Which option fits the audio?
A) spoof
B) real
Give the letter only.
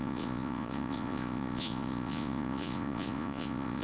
A